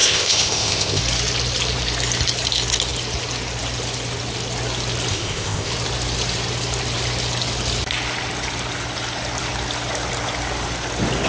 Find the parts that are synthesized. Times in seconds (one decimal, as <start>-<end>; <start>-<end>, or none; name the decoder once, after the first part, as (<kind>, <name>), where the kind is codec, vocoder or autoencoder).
0.0-1.0 (codec, ZipCodec); 5.1-5.7